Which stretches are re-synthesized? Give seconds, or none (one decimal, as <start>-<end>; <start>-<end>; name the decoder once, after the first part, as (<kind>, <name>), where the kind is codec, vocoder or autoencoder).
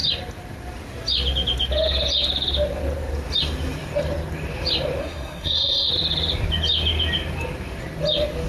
5.0-5.9 (codec, SNAC)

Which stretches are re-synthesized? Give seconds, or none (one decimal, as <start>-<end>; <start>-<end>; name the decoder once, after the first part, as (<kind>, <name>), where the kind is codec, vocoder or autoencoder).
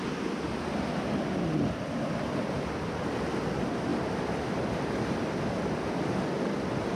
3.9-5.0 (vocoder, BigVGAN v2)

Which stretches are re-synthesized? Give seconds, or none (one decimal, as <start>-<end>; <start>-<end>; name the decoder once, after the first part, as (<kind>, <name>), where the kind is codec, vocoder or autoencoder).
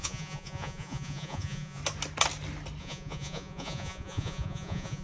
0.0-1.8 (vocoder, Vocos); 2.8-5.0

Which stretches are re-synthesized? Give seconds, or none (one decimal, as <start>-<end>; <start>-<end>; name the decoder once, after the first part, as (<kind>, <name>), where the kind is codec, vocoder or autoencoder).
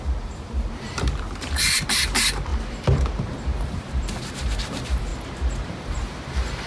0.0-5.1 (vocoder, BigVGAN v2); 5.7-6.7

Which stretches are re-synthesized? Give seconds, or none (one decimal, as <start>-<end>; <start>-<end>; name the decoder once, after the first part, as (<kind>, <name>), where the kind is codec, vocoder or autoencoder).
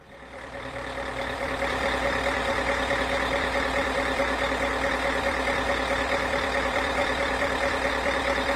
0.0-4.2 (vocoder, BigVGAN v2); 4.9-8.6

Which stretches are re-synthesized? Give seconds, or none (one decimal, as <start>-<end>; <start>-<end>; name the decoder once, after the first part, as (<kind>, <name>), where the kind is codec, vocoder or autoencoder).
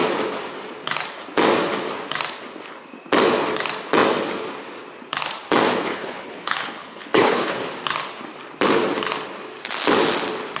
5.9-7.6 (codec, HILCodec)